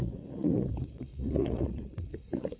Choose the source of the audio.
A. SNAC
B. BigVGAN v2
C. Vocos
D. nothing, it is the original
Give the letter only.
C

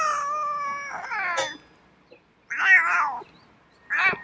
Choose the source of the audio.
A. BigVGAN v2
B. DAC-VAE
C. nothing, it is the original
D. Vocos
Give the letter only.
C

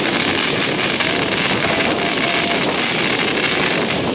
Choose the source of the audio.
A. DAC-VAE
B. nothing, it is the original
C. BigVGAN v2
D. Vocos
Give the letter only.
B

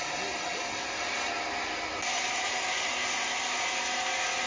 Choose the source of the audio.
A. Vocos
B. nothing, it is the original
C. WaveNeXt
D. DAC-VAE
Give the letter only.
B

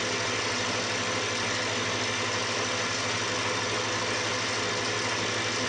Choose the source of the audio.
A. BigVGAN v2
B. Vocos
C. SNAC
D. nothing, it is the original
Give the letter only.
D